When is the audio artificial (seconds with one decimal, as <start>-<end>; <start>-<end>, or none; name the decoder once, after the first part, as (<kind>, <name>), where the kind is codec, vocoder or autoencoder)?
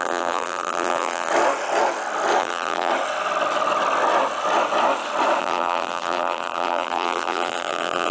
0.0-1.3 (vocoder, BigVGAN v2); 2.4-2.9; 5.4-8.1